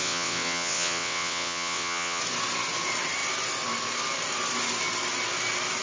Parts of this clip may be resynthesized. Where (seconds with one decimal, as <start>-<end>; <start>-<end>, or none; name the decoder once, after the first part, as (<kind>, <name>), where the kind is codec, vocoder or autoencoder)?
0.0-2.2 (vocoder, WaveNeXt)